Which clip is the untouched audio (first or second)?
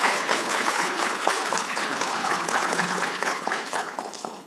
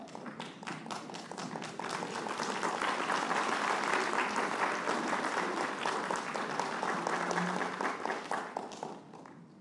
second